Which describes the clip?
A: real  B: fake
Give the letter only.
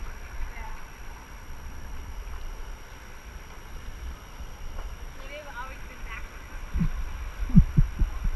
B